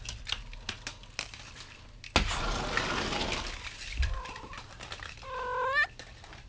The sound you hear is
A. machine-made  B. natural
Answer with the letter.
B